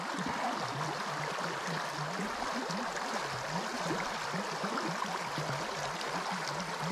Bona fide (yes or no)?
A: yes